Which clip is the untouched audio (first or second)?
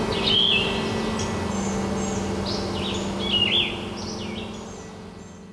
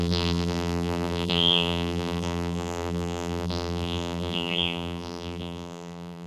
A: first